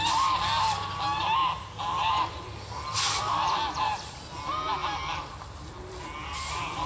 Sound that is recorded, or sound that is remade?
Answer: recorded